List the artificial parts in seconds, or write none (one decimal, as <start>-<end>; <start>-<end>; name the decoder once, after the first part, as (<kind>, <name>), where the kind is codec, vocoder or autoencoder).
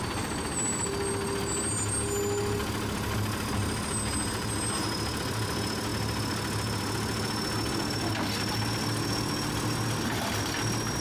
none